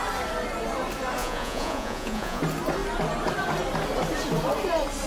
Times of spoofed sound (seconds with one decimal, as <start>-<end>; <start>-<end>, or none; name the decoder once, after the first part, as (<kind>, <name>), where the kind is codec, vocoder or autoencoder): 1.2-2.4 (vocoder, Vocos)